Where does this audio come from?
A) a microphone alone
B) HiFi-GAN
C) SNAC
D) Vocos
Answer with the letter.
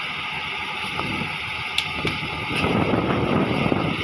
A